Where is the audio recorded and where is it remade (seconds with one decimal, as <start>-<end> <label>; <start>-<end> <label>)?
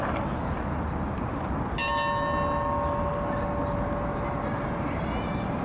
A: 0.0-5.6 recorded